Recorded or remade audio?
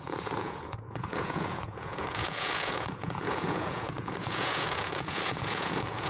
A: remade